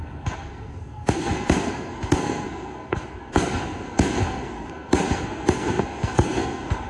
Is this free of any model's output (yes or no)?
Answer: no